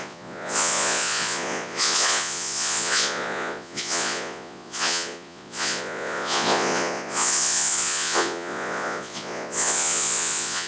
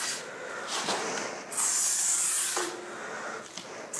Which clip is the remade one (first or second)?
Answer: first